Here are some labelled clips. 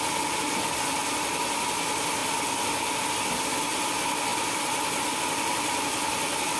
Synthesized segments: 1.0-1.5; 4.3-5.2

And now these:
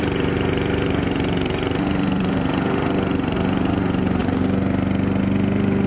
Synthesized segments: 0.0-4.2; 5.2-5.9

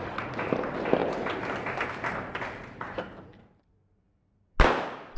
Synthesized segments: 1.0-4.0

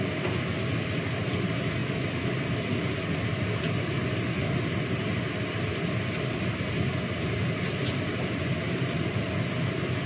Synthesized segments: 4.4-8.2

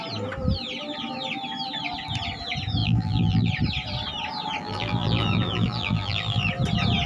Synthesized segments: 2.8-3.5; 4.6-6.5

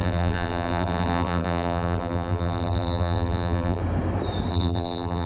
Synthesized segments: 0.0-3.8; 4.5-5.3